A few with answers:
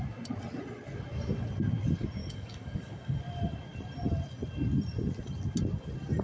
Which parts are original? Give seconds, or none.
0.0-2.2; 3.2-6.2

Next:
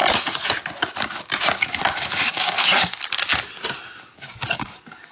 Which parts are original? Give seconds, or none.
0.0-1.7; 2.7-4.0